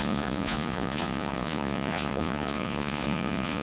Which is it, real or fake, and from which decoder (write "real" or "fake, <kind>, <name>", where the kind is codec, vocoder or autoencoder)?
fake, vocoder, Vocos